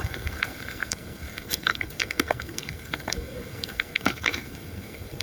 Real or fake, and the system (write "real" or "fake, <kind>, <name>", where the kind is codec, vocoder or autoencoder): fake, codec, SNAC